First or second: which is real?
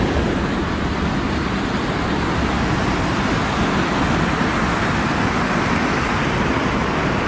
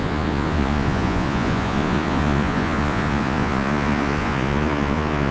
first